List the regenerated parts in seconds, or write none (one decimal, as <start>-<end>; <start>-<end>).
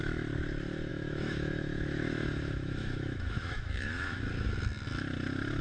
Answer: 0.9-4.2